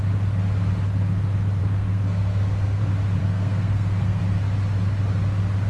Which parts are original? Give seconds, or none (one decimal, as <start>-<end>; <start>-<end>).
0.0-1.6; 2.8-3.2; 4.2-5.7

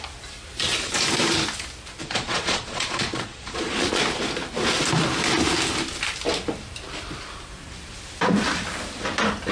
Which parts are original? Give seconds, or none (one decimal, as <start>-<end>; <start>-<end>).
0.0-2.0; 4.0-9.5

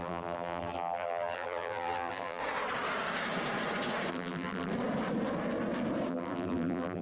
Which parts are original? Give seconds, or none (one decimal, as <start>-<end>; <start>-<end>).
2.4-4.1; 4.7-6.1

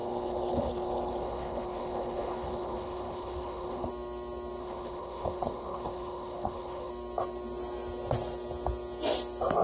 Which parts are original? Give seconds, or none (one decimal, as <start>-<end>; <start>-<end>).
3.9-4.6; 6.9-9.6

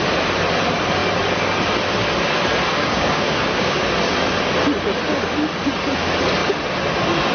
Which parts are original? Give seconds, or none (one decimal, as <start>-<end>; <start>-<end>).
0.0-2.7; 3.9-7.3